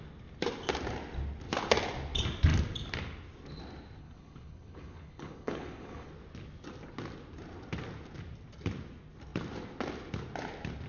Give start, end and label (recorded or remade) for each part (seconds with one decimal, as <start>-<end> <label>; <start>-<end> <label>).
0.0-4.0 recorded; 4.0-6.1 remade; 6.1-10.9 recorded